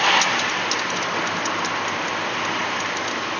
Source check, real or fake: real